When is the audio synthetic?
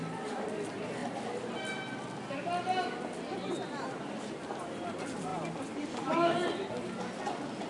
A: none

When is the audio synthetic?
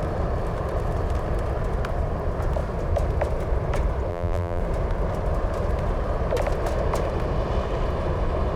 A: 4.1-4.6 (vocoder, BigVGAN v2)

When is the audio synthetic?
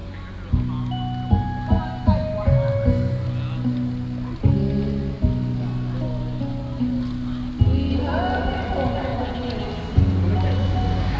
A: 9.1-9.7 (vocoder, Vocos)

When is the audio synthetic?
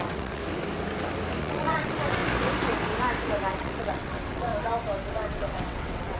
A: 0.0-0.4 (vocoder, WaveNeXt); 1.4-2.2; 3.5-4.5; 5.1-6.2